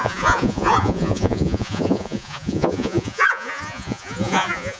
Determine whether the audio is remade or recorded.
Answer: remade